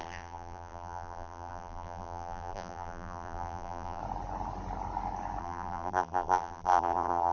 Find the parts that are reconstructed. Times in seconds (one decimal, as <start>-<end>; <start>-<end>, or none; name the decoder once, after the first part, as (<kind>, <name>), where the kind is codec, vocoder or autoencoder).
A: 0.0-4.0 (vocoder, BigVGAN v2); 5.4-7.3